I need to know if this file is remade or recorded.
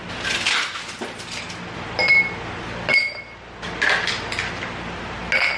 recorded